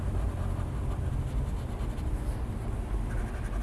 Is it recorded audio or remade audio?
recorded